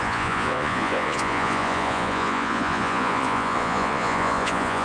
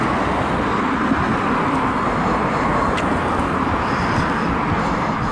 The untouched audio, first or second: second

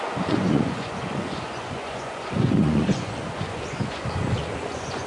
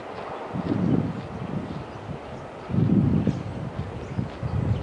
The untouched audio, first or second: second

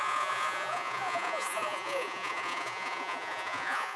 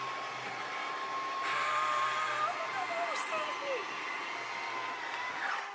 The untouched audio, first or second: second